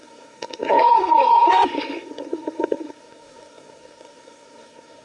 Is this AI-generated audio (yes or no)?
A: yes